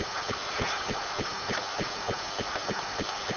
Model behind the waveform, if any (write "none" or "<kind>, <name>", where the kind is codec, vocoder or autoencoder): none